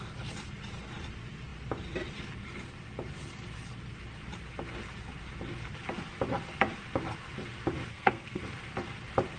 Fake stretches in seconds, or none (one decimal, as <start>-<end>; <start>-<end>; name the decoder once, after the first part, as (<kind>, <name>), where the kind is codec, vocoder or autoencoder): 7.9-8.4 (codec, SNAC)